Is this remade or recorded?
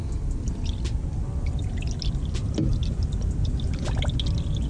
recorded